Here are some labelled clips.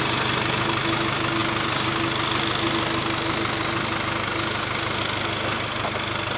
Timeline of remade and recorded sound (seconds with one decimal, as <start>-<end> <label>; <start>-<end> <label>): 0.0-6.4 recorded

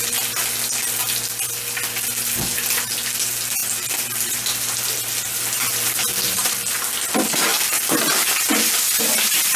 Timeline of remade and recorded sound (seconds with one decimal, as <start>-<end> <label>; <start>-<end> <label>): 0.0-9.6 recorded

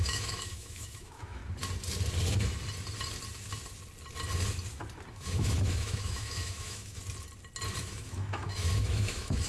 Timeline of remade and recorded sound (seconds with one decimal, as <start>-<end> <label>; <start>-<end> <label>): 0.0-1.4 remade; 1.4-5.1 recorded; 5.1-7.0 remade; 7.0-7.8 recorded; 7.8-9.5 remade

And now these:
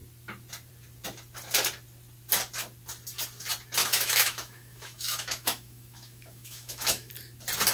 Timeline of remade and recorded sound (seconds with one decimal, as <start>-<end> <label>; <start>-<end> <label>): 0.0-3.8 recorded; 3.8-7.1 remade; 7.1-7.7 recorded

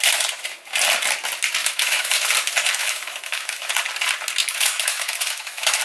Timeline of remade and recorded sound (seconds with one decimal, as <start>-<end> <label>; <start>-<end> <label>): 0.0-1.6 recorded; 1.6-2.3 remade; 2.3-2.8 recorded; 2.8-3.7 remade; 3.7-4.4 recorded; 4.4-5.8 remade

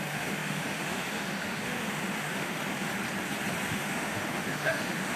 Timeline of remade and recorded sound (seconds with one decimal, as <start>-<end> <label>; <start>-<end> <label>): 0.0-2.9 remade; 2.9-3.7 recorded; 3.7-5.2 remade

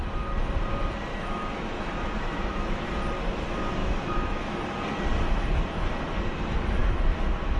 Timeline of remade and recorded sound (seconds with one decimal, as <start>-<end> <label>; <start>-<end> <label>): 0.0-1.1 recorded; 1.1-2.9 remade; 2.9-3.8 recorded; 3.8-4.6 remade; 4.6-7.6 recorded

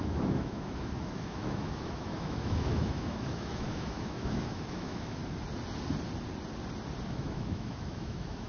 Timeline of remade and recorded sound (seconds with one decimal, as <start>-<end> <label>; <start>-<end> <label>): 0.0-5.2 remade; 5.2-7.1 recorded; 7.1-8.5 remade